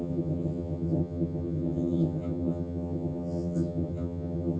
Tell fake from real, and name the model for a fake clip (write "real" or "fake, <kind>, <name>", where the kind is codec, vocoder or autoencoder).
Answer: fake, vocoder, HiFi-GAN